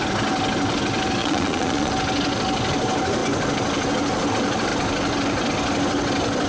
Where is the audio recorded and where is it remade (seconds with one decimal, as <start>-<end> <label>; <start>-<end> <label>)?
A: 0.0-1.2 recorded; 1.2-1.9 remade; 1.9-6.5 recorded